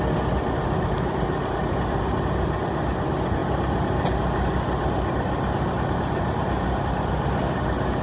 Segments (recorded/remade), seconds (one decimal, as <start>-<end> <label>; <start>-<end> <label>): 0.0-8.0 recorded